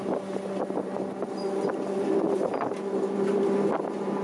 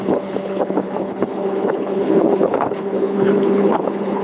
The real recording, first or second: first